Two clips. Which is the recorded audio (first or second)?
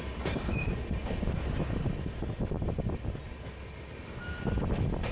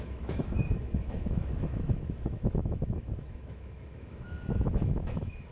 first